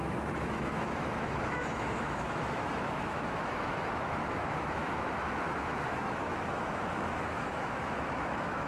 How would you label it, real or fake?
fake